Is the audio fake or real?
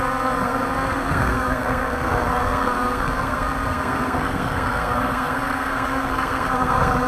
fake